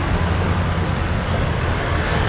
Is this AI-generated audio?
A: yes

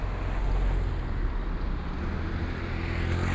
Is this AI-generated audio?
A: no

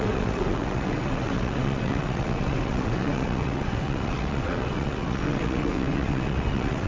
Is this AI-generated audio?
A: yes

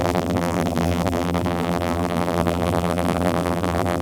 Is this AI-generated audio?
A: yes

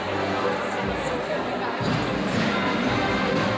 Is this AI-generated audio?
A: no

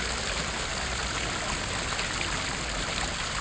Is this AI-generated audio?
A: no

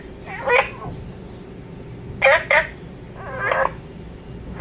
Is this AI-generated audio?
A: no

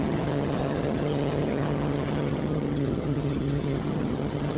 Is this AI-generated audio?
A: yes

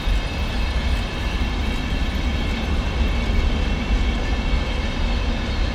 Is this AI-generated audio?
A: no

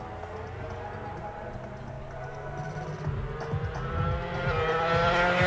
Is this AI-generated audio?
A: no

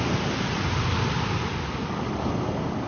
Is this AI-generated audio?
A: no